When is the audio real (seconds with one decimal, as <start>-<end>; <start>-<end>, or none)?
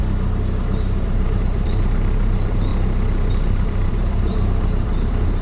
0.0-1.0; 2.7-3.3